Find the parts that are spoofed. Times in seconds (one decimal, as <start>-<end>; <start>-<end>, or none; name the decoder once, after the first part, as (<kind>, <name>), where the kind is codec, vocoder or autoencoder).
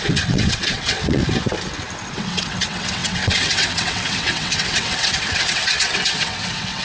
0.0-1.2 (vocoder, WaveNeXt); 2.1-6.8